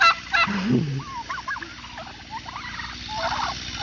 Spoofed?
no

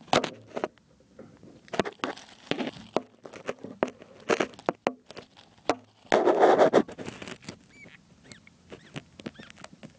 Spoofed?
no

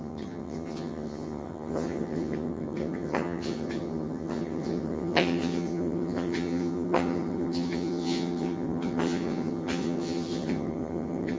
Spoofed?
yes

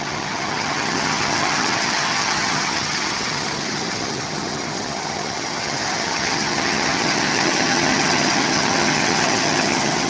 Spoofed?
yes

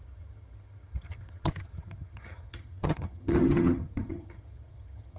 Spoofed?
yes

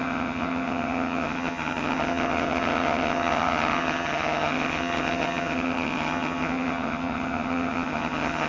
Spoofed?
yes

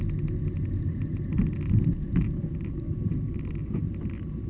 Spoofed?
no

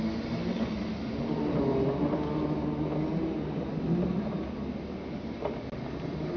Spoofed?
no